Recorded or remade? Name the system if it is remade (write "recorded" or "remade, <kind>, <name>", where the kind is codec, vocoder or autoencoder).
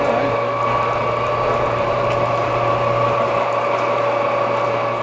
recorded